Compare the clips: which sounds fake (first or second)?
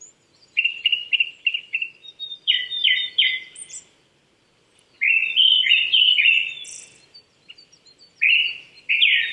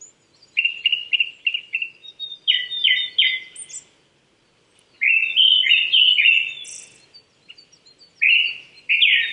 first